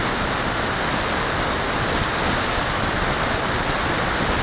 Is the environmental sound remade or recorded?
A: recorded